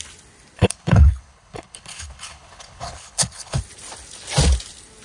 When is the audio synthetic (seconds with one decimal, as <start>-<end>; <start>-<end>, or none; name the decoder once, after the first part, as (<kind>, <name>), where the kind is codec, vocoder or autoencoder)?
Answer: 0.6-3.6 (codec, HILCodec)